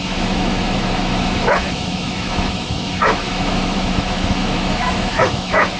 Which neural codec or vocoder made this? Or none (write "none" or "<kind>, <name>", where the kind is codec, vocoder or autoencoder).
autoencoder, DAC-VAE